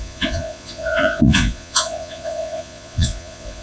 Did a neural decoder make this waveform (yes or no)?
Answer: yes